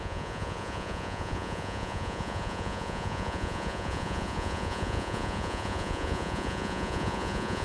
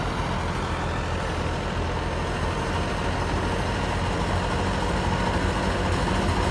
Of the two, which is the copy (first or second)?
first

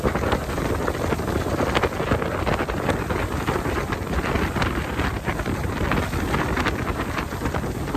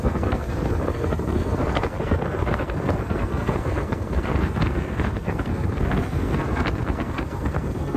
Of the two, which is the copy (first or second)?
second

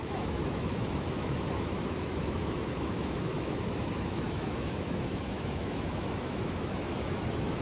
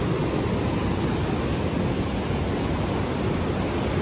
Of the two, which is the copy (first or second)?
first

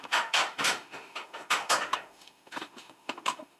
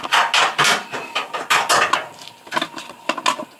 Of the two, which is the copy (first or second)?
first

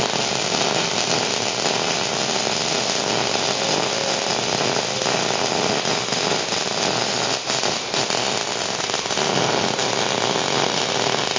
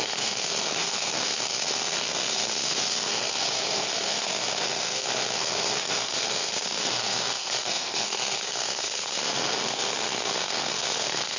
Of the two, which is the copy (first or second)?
second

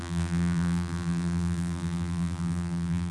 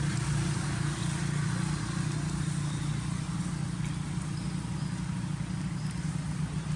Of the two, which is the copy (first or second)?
first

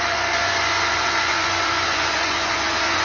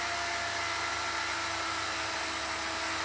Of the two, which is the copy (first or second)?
first